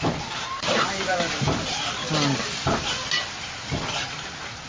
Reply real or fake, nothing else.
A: fake